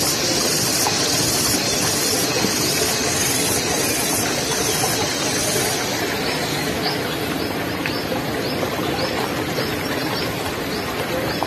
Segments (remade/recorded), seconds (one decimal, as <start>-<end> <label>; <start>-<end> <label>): 0.0-6.5 recorded; 6.5-7.4 remade; 7.4-11.5 recorded